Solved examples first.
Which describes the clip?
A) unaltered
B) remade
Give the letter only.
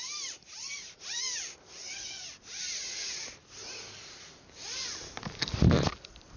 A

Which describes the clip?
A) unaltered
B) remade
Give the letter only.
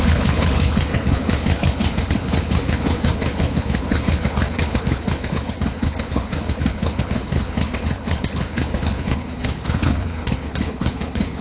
B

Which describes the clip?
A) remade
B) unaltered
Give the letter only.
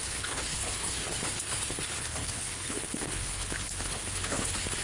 A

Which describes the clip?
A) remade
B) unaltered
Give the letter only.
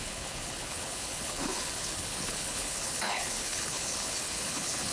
A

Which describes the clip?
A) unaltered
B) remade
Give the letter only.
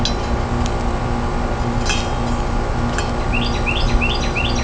A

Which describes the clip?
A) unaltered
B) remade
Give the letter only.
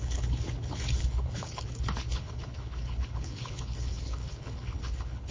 B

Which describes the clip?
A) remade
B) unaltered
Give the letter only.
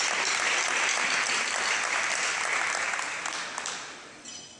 B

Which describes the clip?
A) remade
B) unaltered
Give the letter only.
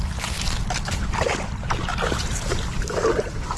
B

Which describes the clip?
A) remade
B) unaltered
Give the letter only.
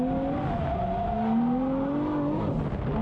B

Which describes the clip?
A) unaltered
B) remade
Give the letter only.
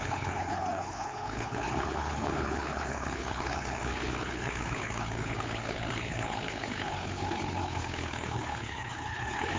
B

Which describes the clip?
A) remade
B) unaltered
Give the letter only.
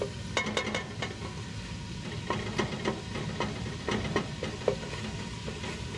B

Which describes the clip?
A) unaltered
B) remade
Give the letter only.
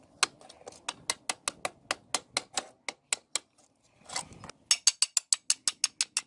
A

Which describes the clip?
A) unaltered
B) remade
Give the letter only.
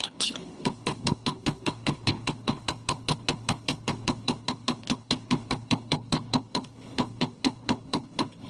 B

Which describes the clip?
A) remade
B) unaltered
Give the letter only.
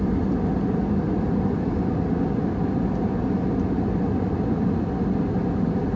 B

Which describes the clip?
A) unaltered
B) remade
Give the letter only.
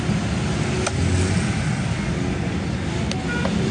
A